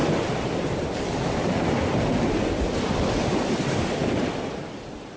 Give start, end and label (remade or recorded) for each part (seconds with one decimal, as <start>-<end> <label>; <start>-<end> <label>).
0.0-3.1 remade; 3.1-5.2 recorded